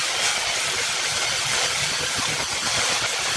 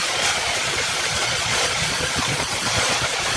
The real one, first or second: first